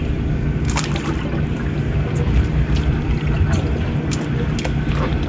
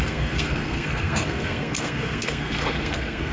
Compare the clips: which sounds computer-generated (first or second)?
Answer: second